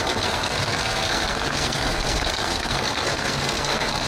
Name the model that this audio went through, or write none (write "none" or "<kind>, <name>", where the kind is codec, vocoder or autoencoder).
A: codec, SNAC